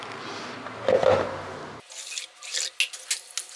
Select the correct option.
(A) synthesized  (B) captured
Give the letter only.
B